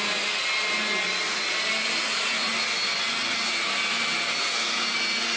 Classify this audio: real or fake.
real